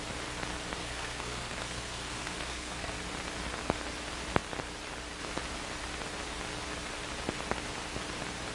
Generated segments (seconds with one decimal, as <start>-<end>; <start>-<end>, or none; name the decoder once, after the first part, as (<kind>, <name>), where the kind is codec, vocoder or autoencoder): 0.8-2.9 (codec, SNAC)